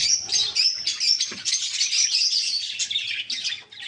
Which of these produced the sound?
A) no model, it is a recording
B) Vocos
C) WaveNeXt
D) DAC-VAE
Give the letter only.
A